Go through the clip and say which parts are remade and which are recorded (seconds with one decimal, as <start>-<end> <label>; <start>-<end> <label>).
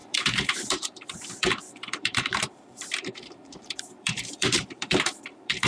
0.0-5.7 remade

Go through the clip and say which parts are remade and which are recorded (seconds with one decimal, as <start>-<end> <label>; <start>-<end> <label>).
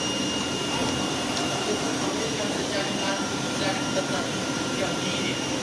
0.0-5.6 remade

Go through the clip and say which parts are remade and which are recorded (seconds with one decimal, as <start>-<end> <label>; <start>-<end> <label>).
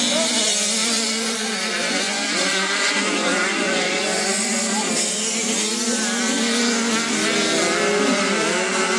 0.0-0.8 recorded; 0.8-4.6 remade; 4.6-9.0 recorded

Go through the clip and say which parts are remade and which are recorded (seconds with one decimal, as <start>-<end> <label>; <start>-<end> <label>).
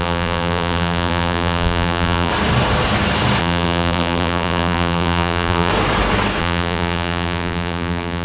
0.0-2.3 remade; 2.3-3.4 recorded; 3.4-5.7 remade; 5.7-6.4 recorded; 6.4-8.2 remade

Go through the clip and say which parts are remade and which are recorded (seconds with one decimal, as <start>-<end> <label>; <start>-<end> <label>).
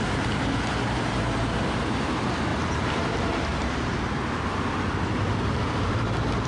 0.0-6.5 remade